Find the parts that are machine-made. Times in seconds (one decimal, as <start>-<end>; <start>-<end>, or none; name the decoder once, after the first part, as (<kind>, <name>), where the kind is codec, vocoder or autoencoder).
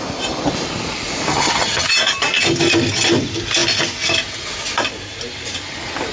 1.3-1.9 (vocoder, HiFi-GAN)